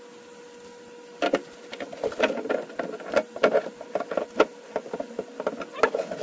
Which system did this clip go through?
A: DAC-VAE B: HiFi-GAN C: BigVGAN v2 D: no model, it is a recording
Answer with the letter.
D